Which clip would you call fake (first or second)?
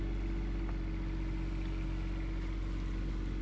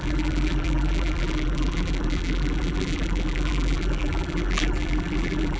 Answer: second